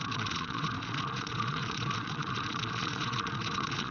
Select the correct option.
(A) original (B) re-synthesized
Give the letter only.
B